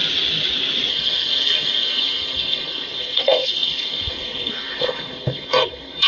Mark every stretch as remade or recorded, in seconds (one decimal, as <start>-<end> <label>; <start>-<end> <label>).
0.0-0.9 recorded; 0.9-6.1 remade